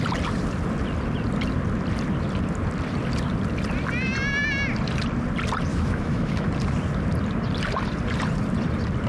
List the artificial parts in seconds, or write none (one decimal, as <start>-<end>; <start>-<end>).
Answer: 5.7-6.5